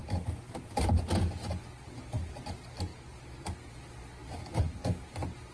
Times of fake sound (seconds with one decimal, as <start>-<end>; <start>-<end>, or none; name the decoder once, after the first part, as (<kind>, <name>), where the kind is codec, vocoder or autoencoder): none